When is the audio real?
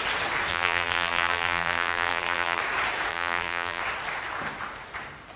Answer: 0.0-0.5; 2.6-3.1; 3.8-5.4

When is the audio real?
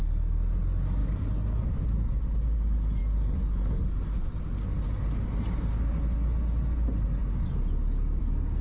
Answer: 0.0-8.6